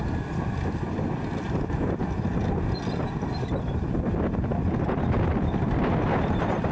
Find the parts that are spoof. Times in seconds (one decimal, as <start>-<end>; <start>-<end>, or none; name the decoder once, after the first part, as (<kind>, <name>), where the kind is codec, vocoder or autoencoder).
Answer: none

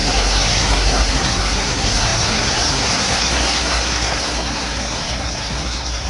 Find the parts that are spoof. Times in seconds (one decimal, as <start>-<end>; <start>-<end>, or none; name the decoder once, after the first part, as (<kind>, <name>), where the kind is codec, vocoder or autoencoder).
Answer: 0.0-6.1 (codec, SNAC)

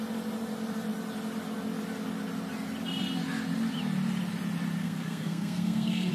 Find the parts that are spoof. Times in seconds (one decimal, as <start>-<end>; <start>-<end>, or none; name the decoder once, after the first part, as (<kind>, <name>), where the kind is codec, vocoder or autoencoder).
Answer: 4.8-6.1 (codec, SNAC)

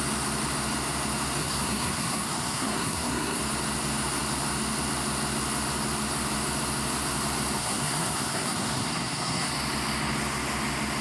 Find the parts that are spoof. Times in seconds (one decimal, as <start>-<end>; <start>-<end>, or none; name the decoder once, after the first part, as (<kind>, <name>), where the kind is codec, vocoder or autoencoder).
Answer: 1.4-3.4 (codec, SNAC); 7.6-9.5

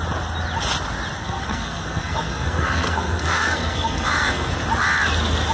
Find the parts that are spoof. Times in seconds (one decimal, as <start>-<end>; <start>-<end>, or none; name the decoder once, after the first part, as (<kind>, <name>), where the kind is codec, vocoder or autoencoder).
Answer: 1.2-4.5 (codec, SNAC)

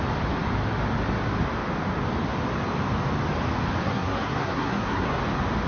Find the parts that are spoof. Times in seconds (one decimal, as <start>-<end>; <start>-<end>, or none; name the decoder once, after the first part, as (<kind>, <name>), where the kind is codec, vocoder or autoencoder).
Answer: 3.8-5.2 (codec, SNAC)